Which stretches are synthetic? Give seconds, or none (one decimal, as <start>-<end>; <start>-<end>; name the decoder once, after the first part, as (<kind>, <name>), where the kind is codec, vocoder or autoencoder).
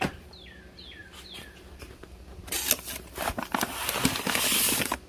none